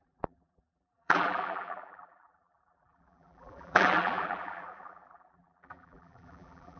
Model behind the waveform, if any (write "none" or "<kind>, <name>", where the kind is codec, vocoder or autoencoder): vocoder, BigVGAN v2